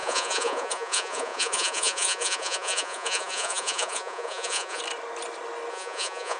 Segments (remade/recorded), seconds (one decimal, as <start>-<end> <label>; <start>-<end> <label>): 0.0-4.8 remade; 4.8-5.7 recorded; 5.7-6.4 remade